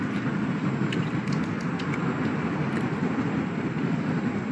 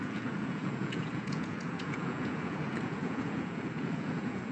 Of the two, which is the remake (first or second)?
second